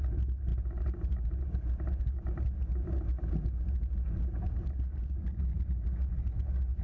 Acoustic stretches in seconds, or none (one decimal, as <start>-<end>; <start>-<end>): 0.0-6.8